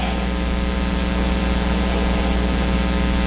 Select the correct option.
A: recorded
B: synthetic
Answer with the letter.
A